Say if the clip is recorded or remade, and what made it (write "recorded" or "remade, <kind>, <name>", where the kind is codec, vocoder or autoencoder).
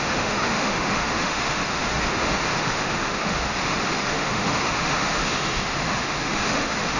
remade, autoencoder, DAC-VAE